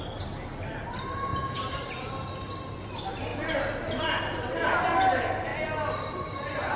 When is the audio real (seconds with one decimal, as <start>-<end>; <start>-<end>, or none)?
0.0-6.8